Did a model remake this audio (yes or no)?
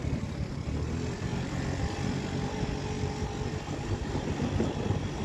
no